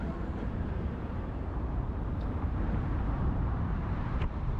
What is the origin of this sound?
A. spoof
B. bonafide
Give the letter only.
A